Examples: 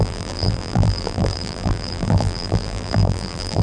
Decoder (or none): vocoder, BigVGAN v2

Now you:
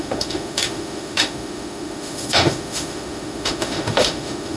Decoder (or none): autoencoder, DAC-VAE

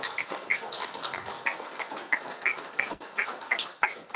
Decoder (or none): codec, SNAC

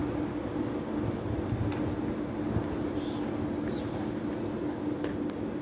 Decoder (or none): none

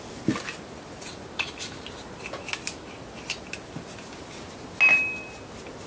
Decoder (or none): none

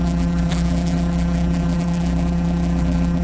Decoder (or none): vocoder, BigVGAN v2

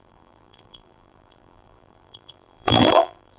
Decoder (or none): vocoder, BigVGAN v2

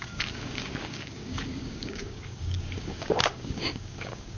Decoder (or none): codec, DAC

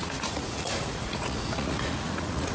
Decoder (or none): vocoder, Vocos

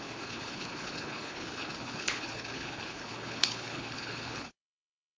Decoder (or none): codec, HILCodec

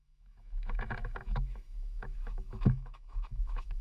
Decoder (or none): autoencoder, DAC-VAE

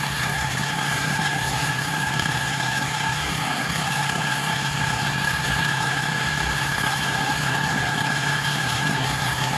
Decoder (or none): codec, SNAC